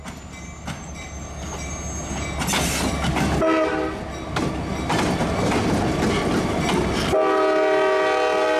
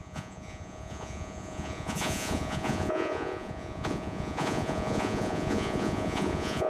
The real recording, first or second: first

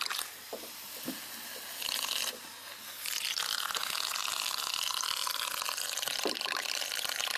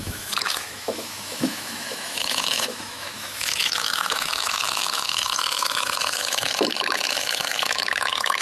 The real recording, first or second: first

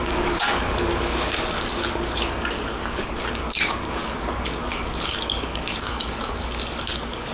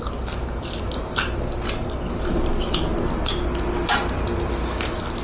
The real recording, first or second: second